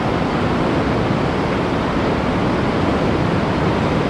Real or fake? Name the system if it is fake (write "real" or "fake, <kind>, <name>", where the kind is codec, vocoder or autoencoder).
real